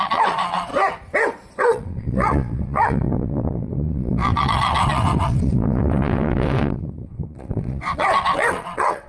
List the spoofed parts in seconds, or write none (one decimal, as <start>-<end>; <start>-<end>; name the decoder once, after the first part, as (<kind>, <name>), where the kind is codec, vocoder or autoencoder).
0.0-0.7 (vocoder, WaveNeXt); 1.5-9.1